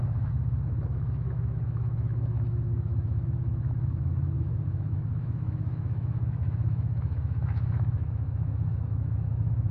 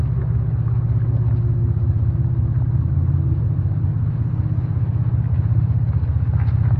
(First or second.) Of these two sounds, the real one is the second